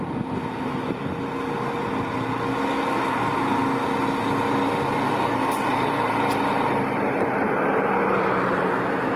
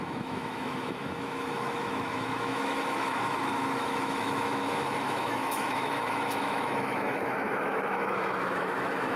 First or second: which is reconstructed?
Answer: second